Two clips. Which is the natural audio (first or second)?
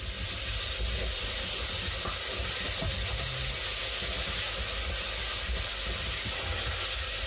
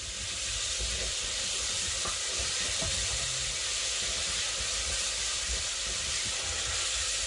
first